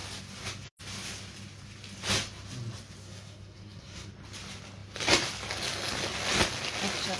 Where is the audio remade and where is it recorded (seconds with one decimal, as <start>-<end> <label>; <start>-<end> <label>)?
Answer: 0.0-3.0 recorded; 3.0-4.1 remade; 4.1-7.2 recorded